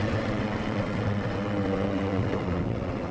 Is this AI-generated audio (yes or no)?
yes